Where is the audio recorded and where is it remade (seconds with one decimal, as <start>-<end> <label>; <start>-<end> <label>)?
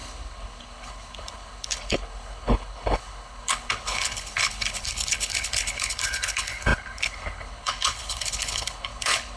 0.0-9.4 remade